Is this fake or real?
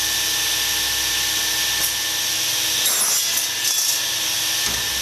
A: real